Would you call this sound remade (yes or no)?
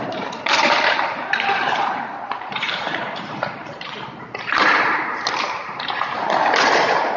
yes